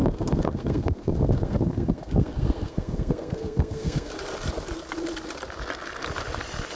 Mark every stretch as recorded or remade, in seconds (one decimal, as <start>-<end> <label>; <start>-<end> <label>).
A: 0.0-4.1 remade; 4.1-6.8 recorded